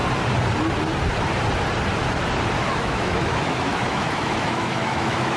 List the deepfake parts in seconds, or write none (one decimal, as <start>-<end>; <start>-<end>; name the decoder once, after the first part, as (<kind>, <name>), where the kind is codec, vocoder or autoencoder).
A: 2.7-5.4 (autoencoder, DAC-VAE)